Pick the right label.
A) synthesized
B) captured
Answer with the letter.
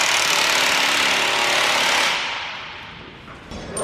B